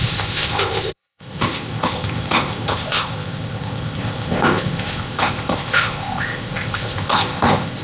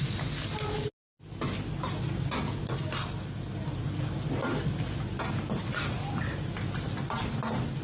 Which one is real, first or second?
second